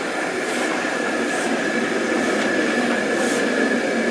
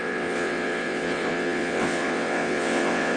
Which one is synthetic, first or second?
second